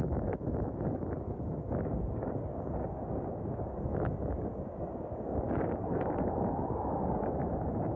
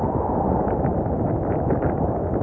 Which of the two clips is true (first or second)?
second